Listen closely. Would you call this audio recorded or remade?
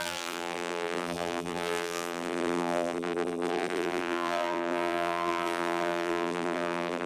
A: remade